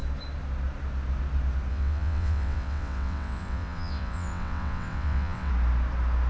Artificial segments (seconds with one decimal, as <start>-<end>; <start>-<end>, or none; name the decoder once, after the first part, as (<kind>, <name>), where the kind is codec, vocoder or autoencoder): 1.7-5.5 (vocoder, WaveNeXt)